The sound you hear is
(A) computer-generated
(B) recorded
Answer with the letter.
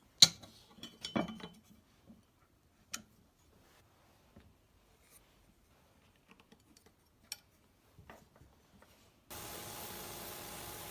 B